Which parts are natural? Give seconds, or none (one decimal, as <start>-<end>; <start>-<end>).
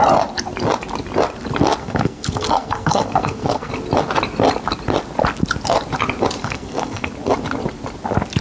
0.0-1.8; 3.7-6.4; 7.1-8.4